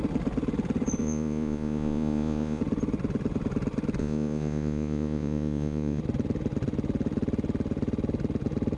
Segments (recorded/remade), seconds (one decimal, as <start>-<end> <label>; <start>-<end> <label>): 0.0-1.0 recorded; 1.0-2.6 remade; 2.6-4.0 recorded; 4.0-6.0 remade; 6.0-8.8 recorded